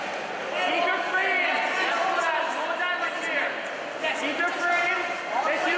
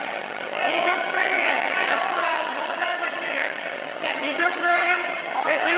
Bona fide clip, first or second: first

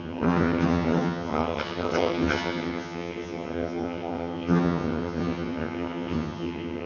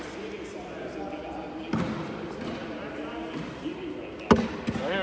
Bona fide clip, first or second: second